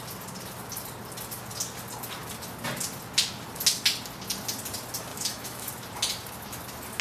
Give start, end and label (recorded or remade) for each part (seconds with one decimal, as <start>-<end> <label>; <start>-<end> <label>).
0.0-5.1 recorded; 5.1-5.7 remade; 5.7-7.0 recorded